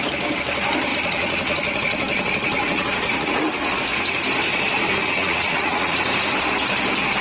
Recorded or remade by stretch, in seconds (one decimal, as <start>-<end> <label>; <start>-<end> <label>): 0.0-0.9 recorded; 0.9-3.7 remade; 3.7-5.0 recorded; 5.0-6.0 remade; 6.0-7.2 recorded